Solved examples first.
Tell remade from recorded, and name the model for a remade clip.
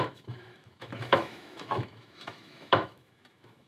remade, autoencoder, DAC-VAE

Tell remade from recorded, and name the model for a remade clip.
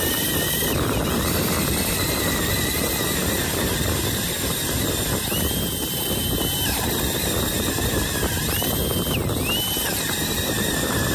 recorded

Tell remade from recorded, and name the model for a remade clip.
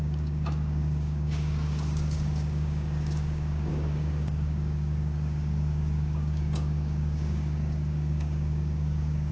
remade, codec, DAC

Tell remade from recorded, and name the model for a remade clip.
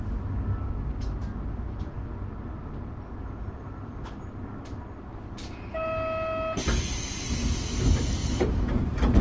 recorded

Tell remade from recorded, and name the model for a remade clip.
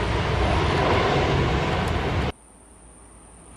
recorded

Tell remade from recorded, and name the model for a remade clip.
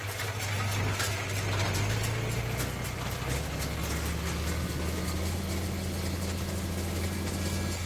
recorded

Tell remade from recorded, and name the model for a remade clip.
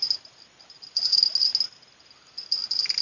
recorded